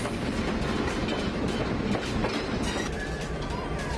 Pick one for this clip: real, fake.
fake